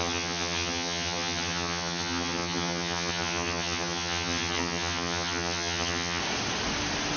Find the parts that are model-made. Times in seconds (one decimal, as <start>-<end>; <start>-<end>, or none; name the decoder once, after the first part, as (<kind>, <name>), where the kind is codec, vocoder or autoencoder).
0.0-6.2 (vocoder, HiFi-GAN)